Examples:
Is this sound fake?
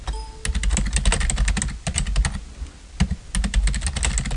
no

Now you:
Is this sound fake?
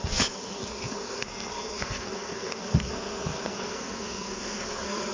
yes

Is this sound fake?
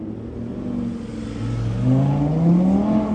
no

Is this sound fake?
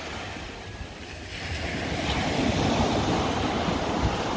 no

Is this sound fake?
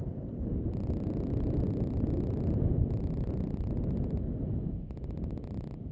no